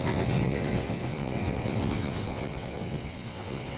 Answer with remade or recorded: remade